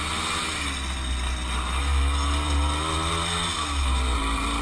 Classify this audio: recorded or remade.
recorded